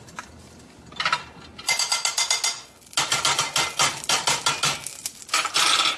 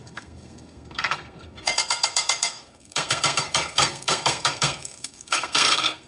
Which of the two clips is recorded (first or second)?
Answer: first